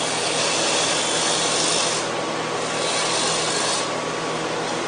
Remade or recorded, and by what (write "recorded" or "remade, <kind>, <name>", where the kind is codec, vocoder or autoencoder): recorded